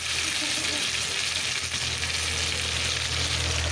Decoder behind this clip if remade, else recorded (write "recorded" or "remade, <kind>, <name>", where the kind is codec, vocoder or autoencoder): recorded